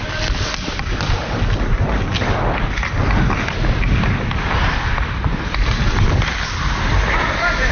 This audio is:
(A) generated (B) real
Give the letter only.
B